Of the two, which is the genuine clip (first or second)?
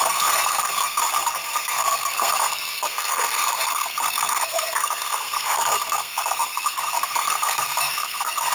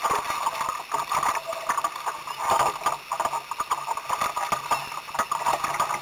second